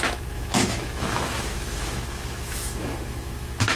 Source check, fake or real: fake